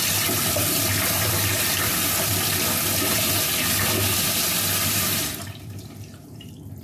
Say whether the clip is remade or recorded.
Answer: remade